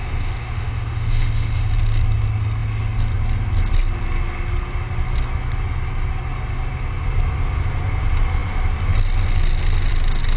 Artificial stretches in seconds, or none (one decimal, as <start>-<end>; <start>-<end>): 0.0-1.7